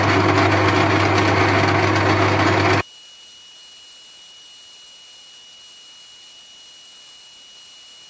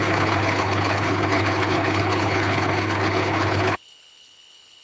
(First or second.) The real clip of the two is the first